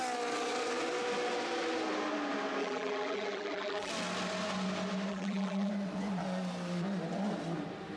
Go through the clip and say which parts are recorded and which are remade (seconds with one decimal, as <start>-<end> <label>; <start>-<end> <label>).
0.0-2.6 recorded; 2.6-3.9 remade; 3.9-5.1 recorded; 5.1-5.7 remade; 5.7-8.0 recorded

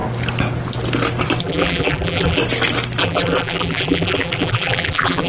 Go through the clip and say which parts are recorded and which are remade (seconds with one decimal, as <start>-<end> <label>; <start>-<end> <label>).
0.0-1.4 recorded; 1.4-2.4 remade; 2.4-3.0 recorded; 3.0-5.3 remade

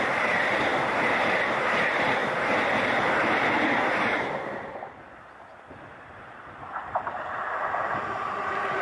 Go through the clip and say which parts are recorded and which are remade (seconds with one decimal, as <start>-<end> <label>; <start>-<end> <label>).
0.0-2.2 remade; 2.2-6.0 recorded; 6.0-8.8 remade

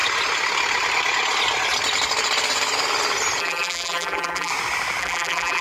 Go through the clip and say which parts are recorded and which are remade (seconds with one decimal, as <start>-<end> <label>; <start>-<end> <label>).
0.0-3.4 recorded; 3.4-4.5 remade; 4.5-5.0 recorded; 5.0-5.6 remade

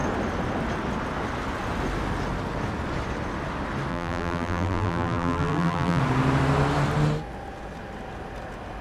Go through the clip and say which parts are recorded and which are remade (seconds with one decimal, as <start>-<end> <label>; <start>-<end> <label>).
0.0-3.9 recorded; 3.9-6.0 remade; 6.0-8.8 recorded

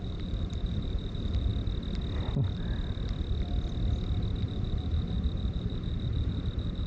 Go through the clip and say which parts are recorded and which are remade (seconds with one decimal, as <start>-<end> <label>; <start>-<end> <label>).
0.0-1.5 remade; 1.5-4.4 recorded; 4.4-6.9 remade

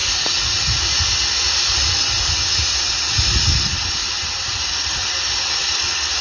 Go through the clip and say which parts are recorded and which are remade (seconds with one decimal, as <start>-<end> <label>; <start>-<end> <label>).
0.0-6.2 recorded